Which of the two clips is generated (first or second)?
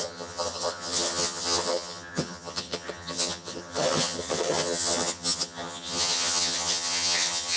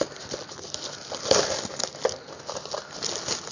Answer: first